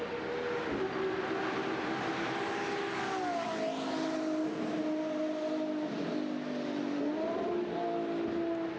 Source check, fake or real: real